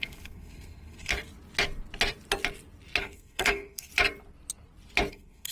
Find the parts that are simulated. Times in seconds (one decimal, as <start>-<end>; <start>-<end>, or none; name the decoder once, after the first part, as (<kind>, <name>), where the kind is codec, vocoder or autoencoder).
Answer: 0.0-1.1 (codec, SNAC); 3.0-3.9; 5.1-5.5

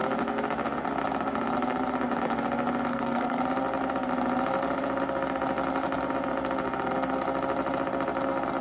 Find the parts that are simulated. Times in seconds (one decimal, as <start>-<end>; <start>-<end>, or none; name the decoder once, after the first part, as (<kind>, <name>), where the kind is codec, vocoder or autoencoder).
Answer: 2.9-3.4 (codec, SNAC)

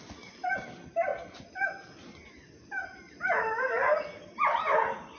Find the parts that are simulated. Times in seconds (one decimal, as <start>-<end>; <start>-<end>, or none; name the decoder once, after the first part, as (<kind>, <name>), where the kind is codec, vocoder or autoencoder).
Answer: none

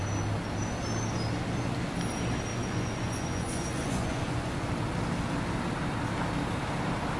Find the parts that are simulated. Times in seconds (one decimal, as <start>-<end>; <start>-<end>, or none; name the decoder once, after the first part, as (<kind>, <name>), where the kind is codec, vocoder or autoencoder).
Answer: 2.5-4.7 (vocoder, Vocos)

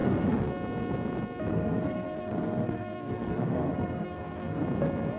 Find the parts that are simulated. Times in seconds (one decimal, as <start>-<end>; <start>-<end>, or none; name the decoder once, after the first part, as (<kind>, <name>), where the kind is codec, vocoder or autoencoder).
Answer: 0.0-0.5 (codec, SNAC); 1.5-4.6

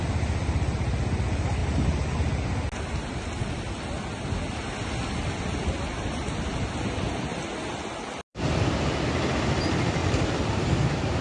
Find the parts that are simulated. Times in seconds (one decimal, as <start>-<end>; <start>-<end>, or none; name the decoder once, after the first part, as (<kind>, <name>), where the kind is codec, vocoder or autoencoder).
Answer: 10.0-10.7 (vocoder, BigVGAN v2)